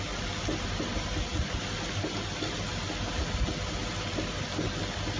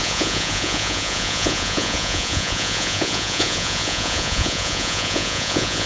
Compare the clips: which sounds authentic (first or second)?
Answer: first